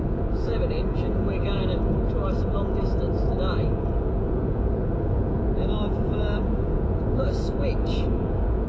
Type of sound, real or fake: fake